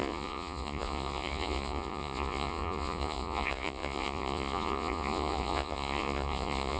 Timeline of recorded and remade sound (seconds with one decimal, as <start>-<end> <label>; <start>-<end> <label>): 0.0-6.8 remade